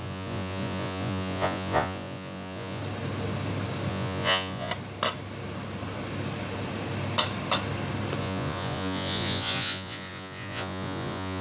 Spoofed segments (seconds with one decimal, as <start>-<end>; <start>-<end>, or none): 0.0-2.8; 3.9-4.7; 8.2-11.4